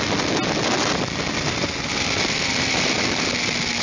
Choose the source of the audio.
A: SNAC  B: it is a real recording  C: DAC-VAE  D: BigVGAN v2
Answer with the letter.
B